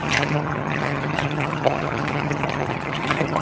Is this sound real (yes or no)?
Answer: no